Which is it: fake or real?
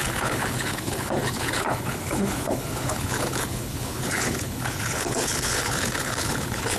fake